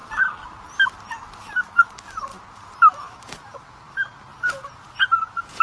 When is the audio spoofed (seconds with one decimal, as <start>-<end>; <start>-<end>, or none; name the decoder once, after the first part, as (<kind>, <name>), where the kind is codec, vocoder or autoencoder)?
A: 4.3-5.6 (vocoder, Vocos)